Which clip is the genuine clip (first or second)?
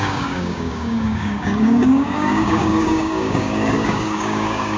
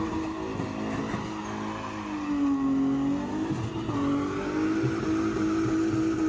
second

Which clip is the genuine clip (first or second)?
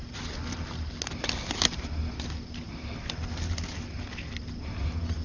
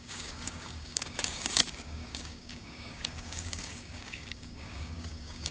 first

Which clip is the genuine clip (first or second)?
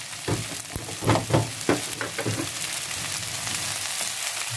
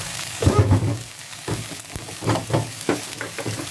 first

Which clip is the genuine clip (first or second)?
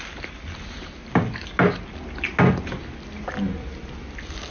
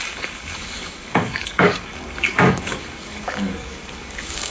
first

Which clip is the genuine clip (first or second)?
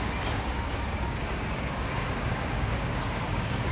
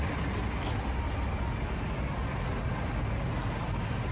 second